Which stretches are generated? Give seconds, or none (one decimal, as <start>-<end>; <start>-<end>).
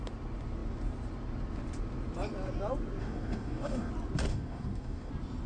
3.0-3.9; 4.3-5.1